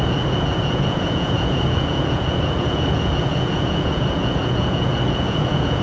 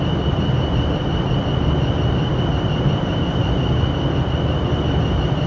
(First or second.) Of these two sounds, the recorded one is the second